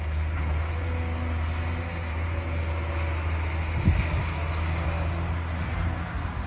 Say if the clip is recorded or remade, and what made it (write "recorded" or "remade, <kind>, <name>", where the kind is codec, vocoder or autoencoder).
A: recorded